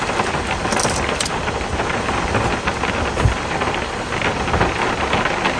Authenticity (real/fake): real